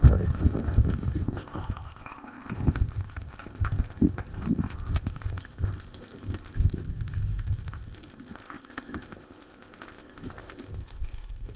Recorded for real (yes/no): no